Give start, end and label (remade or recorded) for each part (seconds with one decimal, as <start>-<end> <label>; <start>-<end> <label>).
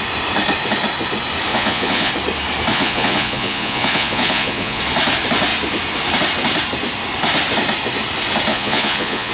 0.0-1.5 recorded; 1.5-2.1 remade; 2.1-2.7 recorded; 2.7-4.8 remade; 4.8-8.5 recorded; 8.5-9.3 remade